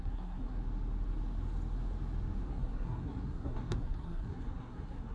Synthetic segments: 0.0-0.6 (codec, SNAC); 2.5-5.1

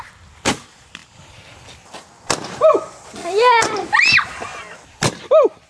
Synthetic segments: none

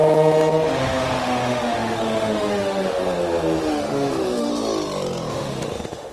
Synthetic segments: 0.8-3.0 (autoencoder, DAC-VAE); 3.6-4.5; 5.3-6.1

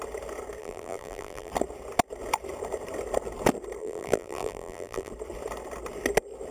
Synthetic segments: 0.6-1.5 (vocoder, BigVGAN v2); 3.8-5.1

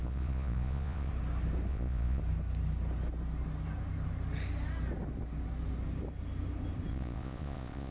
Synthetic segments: 0.0-1.1 (vocoder, Vocos); 1.7-2.2; 6.9-7.9